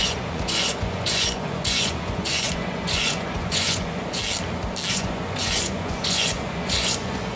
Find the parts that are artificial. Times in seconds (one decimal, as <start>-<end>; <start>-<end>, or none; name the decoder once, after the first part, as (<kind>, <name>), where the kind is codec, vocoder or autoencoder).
0.0-4.2 (vocoder, Vocos); 4.9-7.4